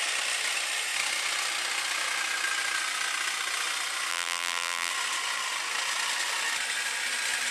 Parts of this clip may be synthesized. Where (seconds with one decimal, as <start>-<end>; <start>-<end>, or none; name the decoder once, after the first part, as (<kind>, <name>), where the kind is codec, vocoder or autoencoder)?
4.1-4.9 (vocoder, BigVGAN v2)